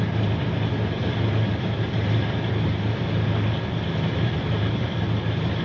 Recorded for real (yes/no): yes